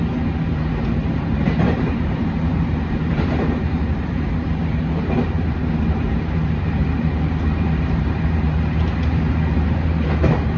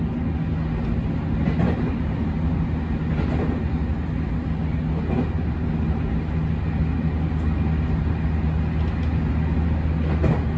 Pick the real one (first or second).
second